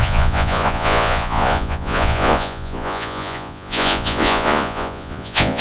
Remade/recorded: remade